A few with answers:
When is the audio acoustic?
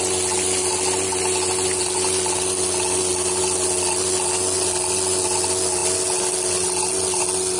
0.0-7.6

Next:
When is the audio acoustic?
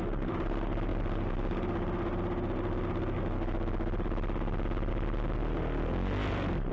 0.0-6.7